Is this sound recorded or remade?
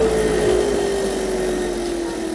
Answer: recorded